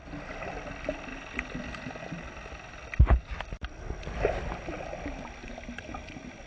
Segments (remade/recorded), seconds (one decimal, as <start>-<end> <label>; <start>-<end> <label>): 0.0-6.5 recorded